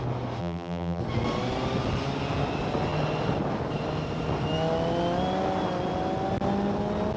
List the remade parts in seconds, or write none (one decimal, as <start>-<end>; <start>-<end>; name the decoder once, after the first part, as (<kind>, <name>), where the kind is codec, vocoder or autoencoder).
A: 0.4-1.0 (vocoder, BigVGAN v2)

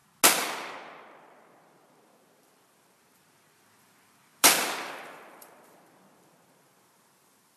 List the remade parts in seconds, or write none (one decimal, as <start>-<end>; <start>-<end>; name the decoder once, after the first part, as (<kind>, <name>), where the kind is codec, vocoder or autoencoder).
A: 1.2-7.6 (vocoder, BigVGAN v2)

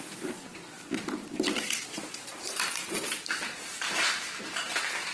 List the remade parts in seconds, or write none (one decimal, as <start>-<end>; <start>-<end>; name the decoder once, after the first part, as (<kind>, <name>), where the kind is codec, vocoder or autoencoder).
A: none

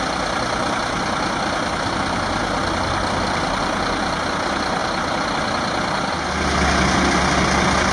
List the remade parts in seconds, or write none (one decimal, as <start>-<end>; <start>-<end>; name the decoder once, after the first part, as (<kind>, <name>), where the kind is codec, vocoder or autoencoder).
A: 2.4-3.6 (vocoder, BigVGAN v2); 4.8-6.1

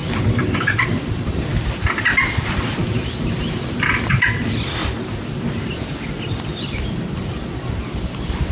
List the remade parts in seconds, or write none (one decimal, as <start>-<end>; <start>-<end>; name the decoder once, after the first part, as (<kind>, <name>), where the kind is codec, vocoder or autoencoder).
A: 0.0-4.8 (vocoder, BigVGAN v2); 6.2-8.5

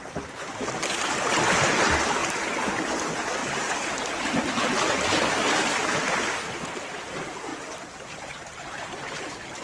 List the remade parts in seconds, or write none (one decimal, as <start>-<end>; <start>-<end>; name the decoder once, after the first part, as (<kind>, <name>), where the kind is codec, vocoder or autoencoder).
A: 3.4-3.9 (vocoder, BigVGAN v2); 7.5-8.9

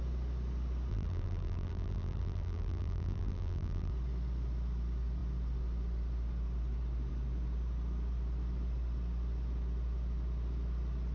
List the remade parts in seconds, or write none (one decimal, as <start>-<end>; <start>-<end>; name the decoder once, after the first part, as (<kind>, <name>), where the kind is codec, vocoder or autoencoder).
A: 0.9-3.9 (vocoder, BigVGAN v2)

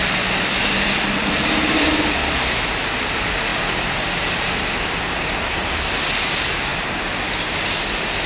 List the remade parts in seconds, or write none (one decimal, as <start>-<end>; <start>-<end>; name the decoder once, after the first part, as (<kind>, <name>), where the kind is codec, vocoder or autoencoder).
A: 0.0-8.3 (vocoder, BigVGAN v2)